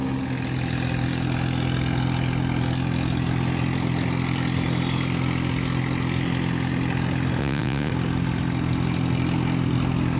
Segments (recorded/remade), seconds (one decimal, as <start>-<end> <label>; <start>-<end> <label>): 0.0-7.4 recorded; 7.4-7.9 remade; 7.9-10.2 recorded